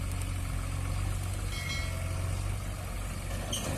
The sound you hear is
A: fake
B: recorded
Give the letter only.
B